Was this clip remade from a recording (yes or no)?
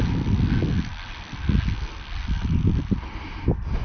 no